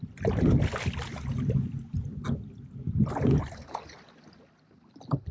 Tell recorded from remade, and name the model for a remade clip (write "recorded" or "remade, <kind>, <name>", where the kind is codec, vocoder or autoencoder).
recorded